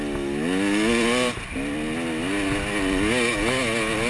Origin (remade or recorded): recorded